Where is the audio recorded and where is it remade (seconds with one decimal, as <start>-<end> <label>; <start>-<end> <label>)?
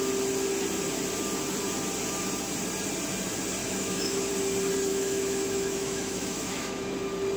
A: 0.0-3.6 recorded; 3.6-4.3 remade; 4.3-4.9 recorded; 4.9-6.9 remade; 6.9-7.4 recorded